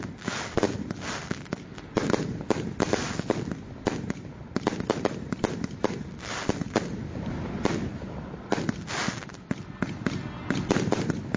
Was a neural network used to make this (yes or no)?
no